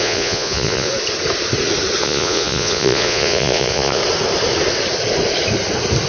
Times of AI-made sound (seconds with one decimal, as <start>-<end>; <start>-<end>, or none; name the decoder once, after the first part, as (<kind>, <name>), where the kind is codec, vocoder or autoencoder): 0.0-0.9 (vocoder, Vocos); 2.0-4.0